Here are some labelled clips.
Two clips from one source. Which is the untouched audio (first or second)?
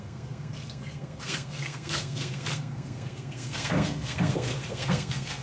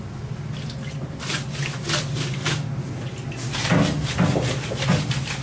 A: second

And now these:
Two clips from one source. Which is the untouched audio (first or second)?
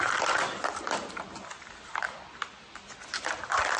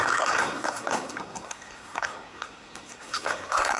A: first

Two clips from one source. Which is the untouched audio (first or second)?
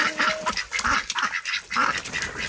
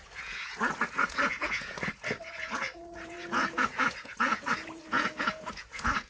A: first